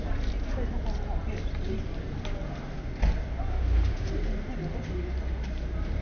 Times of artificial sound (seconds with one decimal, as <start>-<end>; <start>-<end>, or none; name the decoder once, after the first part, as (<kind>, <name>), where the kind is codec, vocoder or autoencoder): 3.5-4.1 (autoencoder, DAC-VAE)